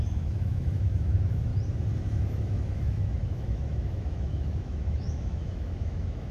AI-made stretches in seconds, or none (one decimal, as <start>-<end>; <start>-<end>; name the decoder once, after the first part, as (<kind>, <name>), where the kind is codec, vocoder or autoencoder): 0.0-1.5 (autoencoder, DAC-VAE); 2.0-6.3